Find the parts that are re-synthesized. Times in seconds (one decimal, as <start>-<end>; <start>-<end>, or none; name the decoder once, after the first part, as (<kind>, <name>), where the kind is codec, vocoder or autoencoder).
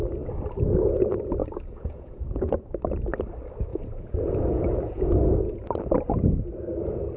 1.4-2.7 (vocoder, Vocos); 3.7-5.3